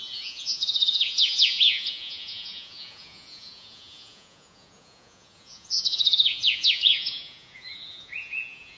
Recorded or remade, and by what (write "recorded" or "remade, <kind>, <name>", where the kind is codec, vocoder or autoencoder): remade, vocoder, Vocos